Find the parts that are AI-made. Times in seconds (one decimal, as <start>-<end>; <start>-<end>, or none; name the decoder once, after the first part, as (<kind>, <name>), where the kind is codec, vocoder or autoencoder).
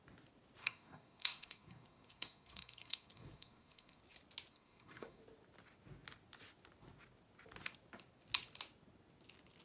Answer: 0.6-4.0 (codec, SNAC); 4.5-5.2